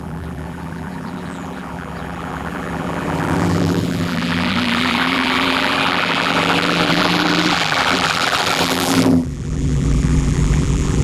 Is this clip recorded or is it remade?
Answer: remade